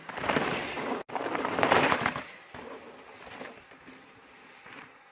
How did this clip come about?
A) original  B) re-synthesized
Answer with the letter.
A